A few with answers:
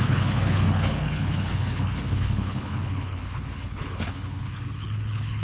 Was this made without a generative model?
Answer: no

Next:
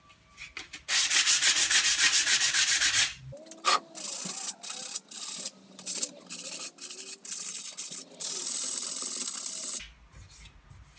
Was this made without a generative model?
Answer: yes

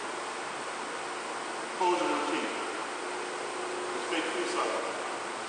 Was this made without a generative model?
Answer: yes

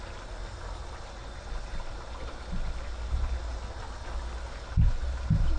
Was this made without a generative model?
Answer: yes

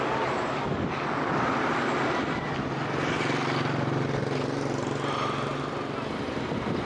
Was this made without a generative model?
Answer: yes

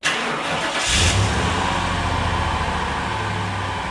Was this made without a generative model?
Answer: yes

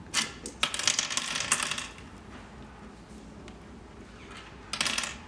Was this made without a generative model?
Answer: yes